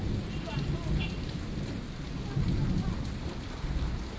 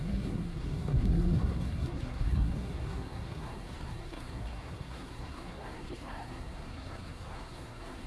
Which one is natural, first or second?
first